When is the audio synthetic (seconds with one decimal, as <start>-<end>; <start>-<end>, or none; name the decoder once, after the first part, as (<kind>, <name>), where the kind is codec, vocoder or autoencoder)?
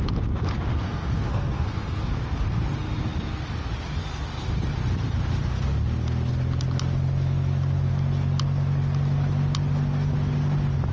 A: 0.7-2.1 (codec, SNAC)